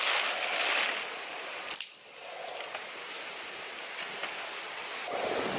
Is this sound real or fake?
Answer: real